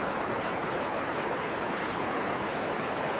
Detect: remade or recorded remade